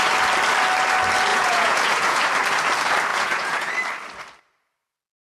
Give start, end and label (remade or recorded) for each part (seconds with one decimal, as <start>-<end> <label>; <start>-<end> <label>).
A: 0.0-1.3 recorded; 1.3-2.2 remade; 2.2-3.1 recorded; 3.1-3.7 remade; 3.7-5.4 recorded